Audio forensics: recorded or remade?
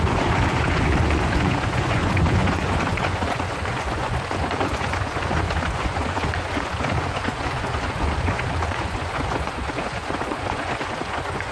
remade